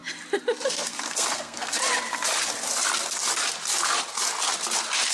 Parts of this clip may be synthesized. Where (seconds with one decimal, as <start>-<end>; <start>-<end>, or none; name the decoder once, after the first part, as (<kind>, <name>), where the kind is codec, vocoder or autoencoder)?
0.7-1.8 (codec, SNAC)